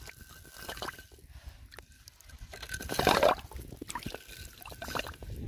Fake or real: real